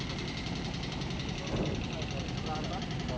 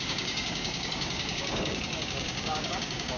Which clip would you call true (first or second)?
first